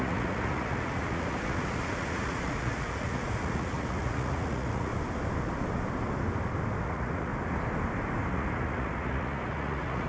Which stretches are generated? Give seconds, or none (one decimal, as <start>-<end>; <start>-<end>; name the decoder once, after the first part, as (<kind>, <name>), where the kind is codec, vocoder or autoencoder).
0.0-4.9 (vocoder, Vocos); 6.8-7.3; 8.3-10.1